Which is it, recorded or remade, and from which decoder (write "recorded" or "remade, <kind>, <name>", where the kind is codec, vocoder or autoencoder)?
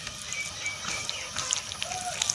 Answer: recorded